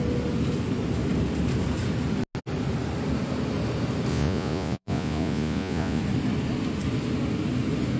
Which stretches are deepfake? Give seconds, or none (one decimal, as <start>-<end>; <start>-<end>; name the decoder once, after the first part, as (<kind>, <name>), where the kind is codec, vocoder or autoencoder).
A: 4.1-6.0 (vocoder, Vocos)

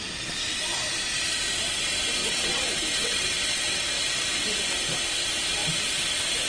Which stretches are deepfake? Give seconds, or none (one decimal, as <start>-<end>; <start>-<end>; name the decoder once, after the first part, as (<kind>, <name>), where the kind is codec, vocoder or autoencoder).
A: 2.2-3.8 (vocoder, WaveNeXt)

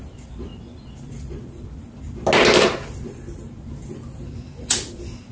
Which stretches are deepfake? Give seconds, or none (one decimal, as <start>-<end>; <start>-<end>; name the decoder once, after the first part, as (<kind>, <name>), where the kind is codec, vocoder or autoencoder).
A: none

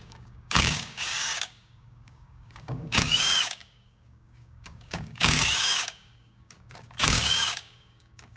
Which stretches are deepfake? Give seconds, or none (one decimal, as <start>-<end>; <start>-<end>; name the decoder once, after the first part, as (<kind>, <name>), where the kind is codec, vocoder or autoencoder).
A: 0.0-8.4 (codec, DAC)

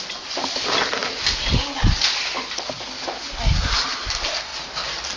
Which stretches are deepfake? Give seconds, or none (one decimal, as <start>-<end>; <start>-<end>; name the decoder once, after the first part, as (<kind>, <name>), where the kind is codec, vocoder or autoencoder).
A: none

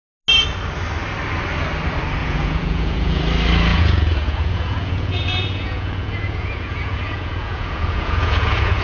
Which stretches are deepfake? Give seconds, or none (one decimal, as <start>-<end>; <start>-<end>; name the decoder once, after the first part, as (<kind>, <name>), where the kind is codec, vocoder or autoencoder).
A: 2.2-3.2 (vocoder, Vocos); 3.7-8.8